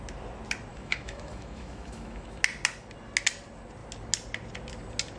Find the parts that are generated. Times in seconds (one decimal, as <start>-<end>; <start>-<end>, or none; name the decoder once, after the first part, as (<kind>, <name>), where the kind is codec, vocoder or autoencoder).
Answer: 0.7-2.4 (autoencoder, DAC-VAE)